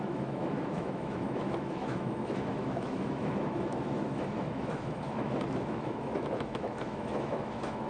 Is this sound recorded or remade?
remade